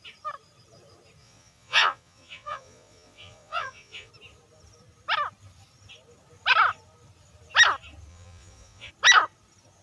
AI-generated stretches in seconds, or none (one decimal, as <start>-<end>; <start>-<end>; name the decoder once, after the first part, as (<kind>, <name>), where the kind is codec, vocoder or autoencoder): 1.2-4.1 (vocoder, Vocos); 8.1-8.9